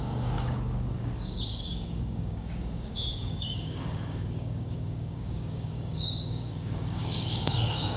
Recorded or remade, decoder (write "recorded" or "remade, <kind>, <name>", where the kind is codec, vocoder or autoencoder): remade, codec, DAC